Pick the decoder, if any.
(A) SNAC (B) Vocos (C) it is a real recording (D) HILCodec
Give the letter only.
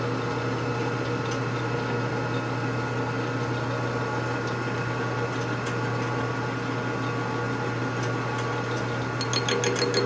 C